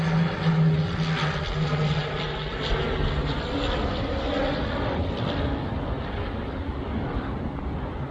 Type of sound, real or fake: real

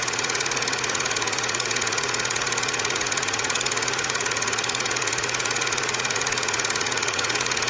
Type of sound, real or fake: fake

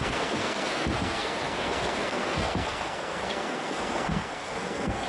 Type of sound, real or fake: fake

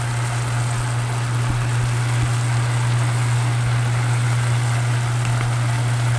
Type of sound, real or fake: real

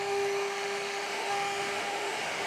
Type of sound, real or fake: fake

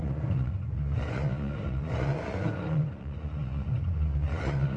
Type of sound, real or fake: fake